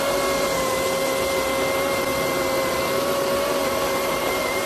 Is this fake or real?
real